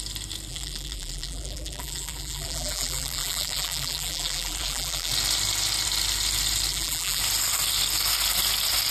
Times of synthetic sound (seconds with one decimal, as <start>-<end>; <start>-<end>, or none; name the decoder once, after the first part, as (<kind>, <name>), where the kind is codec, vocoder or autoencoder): 0.5-5.1 (vocoder, BigVGAN v2); 6.7-7.2